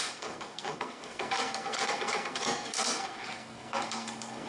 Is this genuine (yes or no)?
no